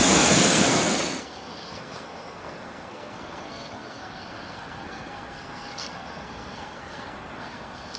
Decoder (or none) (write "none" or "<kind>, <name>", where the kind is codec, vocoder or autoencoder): codec, SNAC